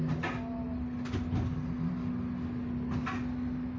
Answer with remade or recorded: recorded